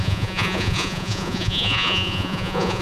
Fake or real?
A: fake